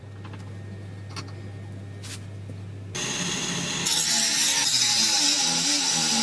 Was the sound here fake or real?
real